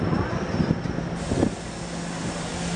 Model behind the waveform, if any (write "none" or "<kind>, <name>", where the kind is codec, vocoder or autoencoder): none